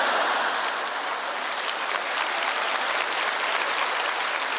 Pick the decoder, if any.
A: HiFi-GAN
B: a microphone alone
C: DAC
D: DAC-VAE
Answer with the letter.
B